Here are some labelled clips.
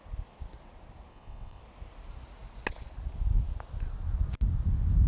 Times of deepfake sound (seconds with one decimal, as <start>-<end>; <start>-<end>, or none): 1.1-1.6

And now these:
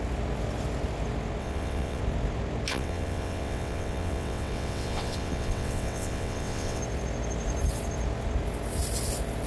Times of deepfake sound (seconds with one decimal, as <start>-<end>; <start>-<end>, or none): 1.4-2.0; 2.7-6.8

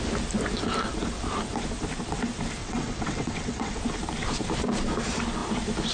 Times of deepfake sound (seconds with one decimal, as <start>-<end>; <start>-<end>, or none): 2.6-3.8

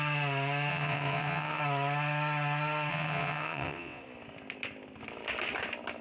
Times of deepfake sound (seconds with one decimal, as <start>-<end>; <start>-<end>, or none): 0.7-1.6; 2.9-4.0